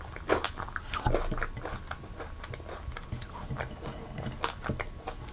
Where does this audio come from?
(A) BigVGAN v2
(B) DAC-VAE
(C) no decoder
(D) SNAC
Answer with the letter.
C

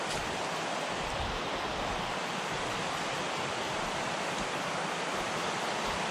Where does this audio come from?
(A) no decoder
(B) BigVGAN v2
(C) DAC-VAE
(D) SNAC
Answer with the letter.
A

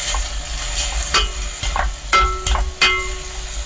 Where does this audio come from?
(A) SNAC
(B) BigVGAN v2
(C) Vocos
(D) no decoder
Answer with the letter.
D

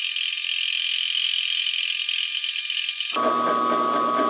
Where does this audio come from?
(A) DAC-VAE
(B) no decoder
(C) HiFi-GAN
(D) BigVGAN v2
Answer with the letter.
B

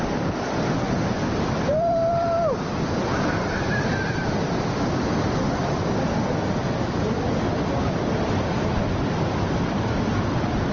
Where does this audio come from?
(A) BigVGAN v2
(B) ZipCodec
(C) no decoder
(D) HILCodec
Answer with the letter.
A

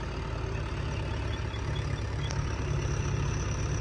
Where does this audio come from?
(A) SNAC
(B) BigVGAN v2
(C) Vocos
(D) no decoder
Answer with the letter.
D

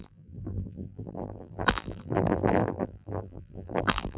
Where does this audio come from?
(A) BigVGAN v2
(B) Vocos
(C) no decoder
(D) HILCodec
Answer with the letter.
A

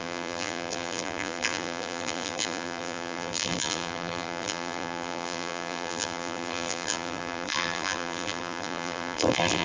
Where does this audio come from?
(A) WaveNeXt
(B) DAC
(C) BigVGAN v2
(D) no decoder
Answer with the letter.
C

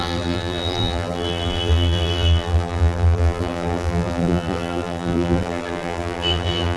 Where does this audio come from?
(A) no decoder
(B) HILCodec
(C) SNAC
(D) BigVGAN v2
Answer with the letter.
D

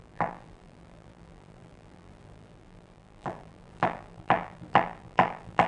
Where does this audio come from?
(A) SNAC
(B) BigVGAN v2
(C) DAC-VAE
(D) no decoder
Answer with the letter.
B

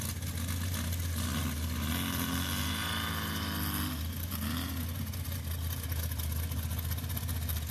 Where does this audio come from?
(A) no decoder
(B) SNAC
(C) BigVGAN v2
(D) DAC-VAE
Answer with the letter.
A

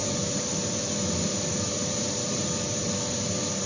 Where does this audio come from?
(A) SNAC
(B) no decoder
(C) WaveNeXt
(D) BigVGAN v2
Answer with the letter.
D